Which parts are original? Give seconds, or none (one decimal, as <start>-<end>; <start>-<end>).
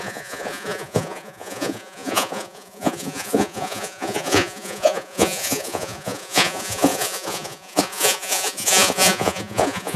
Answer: none